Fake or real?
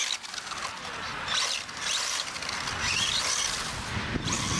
real